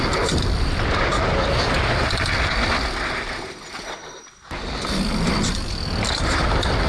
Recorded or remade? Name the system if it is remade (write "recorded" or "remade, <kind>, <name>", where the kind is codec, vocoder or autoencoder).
recorded